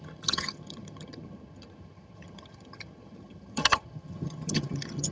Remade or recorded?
remade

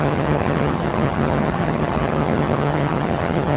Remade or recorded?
remade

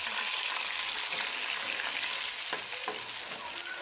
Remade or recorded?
recorded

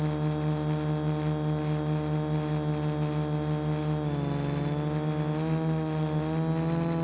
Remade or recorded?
recorded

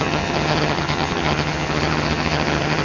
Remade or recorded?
remade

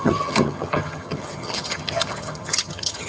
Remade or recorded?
remade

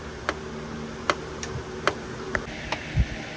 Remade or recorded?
recorded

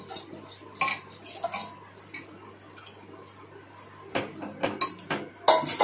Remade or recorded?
recorded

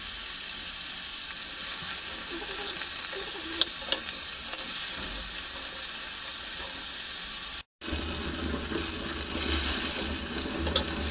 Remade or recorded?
recorded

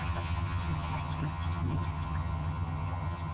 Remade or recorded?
remade